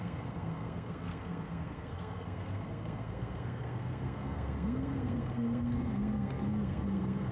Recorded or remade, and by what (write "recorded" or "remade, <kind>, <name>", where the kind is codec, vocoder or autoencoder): remade, codec, SNAC